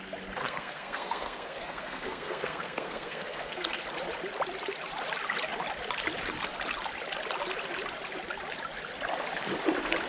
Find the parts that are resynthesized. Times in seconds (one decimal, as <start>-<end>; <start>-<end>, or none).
0.4-3.8